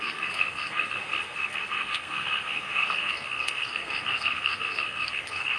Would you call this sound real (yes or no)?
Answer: no